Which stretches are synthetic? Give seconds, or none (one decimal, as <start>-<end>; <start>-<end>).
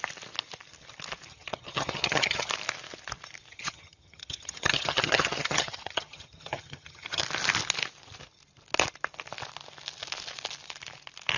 1.3-2.5; 3.5-7.2